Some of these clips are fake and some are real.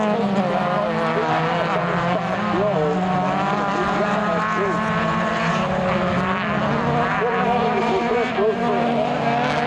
real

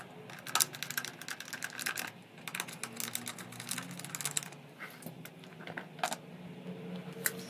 real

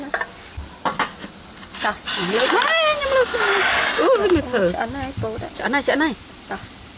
real